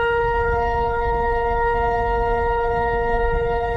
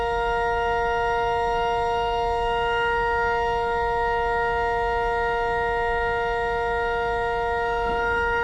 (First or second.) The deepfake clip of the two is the first